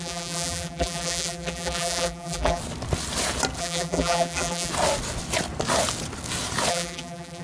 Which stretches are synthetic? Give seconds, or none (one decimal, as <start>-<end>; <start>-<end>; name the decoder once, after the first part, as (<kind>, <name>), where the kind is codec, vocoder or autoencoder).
0.0-2.6 (vocoder, BigVGAN v2); 3.6-4.7; 6.7-7.4